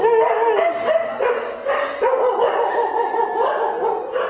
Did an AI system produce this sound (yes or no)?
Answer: no